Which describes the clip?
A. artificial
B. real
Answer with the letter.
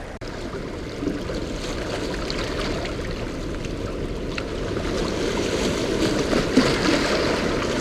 B